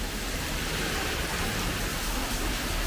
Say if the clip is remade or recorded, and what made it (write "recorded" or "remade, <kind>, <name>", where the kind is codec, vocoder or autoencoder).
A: remade, vocoder, BigVGAN v2